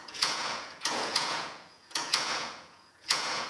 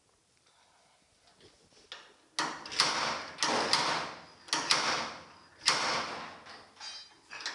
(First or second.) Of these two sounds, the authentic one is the second